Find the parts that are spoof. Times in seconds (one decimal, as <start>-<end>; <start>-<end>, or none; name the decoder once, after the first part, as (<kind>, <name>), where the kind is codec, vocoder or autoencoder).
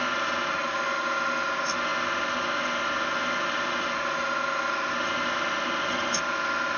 none